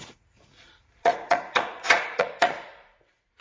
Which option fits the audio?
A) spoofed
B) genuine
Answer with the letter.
A